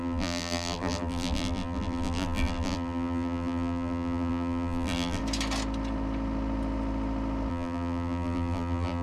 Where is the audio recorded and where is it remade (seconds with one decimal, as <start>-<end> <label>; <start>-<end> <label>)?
0.0-5.2 remade; 5.2-7.5 recorded; 7.5-9.0 remade